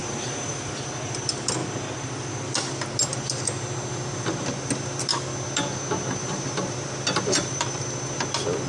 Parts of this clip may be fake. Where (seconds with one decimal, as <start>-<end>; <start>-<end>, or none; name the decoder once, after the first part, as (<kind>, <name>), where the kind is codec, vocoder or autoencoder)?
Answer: 0.0-0.5 (vocoder, BigVGAN v2); 6.2-7.8